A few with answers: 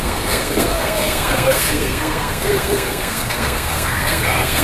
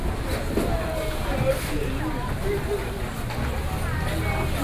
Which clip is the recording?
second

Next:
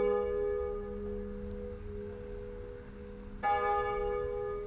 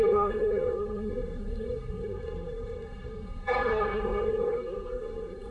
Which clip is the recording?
first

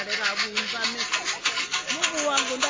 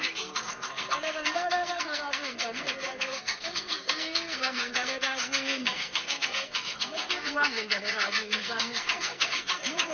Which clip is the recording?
first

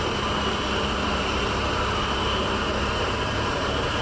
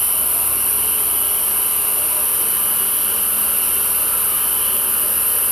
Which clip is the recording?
second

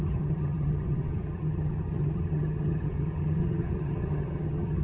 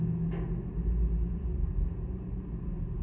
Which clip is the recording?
second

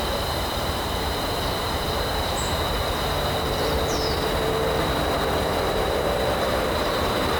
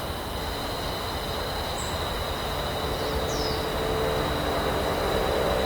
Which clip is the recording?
second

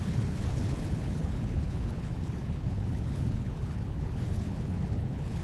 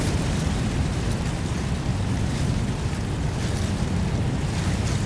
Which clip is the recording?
second